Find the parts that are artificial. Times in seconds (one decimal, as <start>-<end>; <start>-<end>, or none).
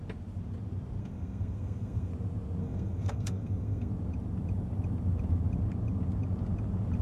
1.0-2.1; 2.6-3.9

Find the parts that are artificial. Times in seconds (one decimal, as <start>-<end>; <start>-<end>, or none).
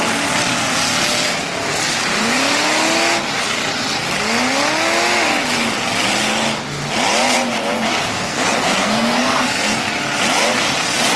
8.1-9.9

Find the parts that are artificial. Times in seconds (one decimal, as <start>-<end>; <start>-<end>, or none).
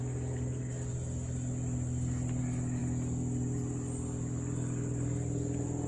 none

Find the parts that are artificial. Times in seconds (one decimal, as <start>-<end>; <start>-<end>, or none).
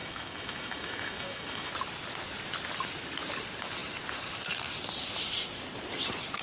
0.0-1.7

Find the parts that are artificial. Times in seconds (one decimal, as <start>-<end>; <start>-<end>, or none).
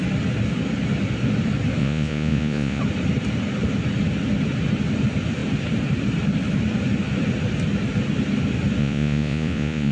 1.8-2.8; 8.8-9.9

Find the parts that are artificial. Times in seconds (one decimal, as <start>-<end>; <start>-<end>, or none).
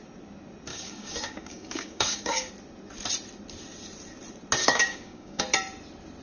0.7-2.5; 4.6-5.4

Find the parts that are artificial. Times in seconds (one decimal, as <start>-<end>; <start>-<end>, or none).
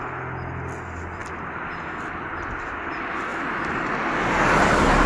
none